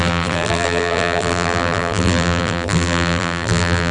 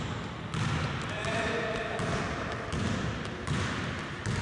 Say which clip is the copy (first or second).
first